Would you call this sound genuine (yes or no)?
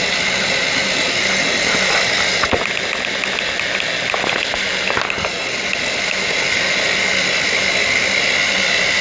yes